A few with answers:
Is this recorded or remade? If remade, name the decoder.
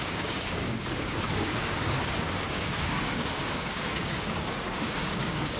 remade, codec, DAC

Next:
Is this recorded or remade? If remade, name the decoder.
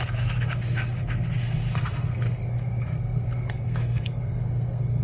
remade, codec, SNAC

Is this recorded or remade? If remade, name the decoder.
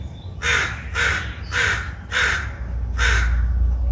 recorded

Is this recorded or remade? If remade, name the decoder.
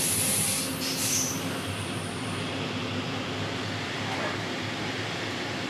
recorded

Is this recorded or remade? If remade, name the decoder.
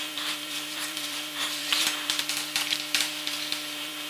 remade, vocoder, BigVGAN v2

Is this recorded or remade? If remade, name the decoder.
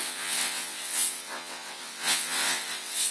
remade, vocoder, WaveNeXt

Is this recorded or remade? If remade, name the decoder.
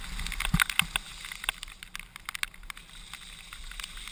recorded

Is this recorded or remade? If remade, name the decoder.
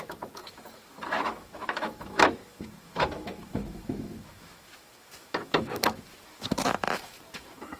remade, autoencoder, DAC-VAE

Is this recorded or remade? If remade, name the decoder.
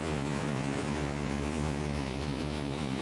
remade, vocoder, Vocos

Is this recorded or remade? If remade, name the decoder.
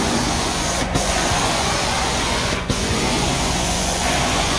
remade, vocoder, Vocos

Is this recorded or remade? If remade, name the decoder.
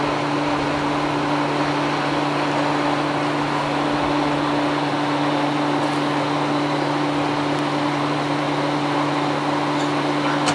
recorded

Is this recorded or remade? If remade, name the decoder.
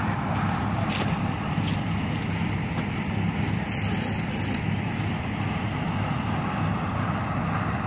recorded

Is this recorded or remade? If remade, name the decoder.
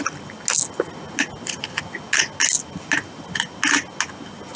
recorded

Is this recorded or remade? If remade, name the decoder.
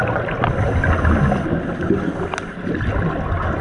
recorded